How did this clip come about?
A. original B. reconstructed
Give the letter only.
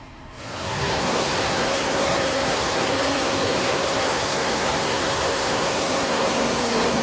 B